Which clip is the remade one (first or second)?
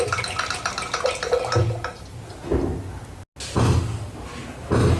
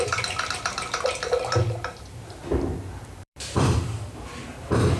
second